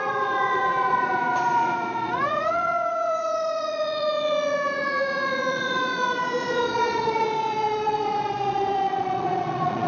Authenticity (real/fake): fake